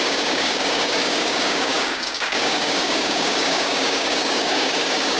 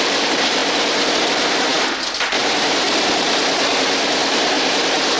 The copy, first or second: first